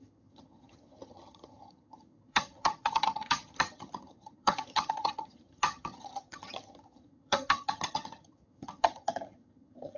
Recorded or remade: remade